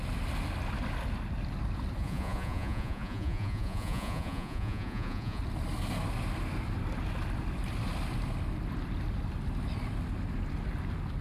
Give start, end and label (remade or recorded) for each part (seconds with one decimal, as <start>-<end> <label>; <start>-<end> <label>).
0.0-2.0 recorded; 2.0-5.4 remade; 5.4-11.2 recorded